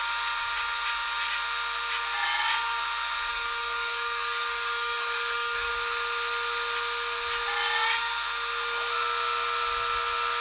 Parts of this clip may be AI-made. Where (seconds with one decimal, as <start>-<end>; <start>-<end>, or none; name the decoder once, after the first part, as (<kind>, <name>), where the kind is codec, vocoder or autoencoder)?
3.3-5.7 (codec, DAC)